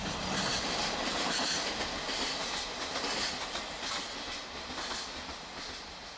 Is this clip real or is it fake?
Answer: real